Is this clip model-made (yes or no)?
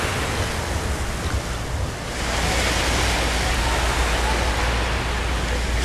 no